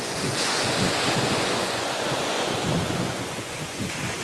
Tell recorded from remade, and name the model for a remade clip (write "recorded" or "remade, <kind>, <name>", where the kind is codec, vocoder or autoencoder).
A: remade, vocoder, Vocos